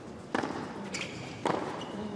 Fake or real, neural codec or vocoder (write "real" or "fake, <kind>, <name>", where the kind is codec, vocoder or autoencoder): real